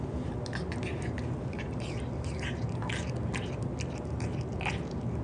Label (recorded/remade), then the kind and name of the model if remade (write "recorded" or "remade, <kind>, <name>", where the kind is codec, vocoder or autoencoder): recorded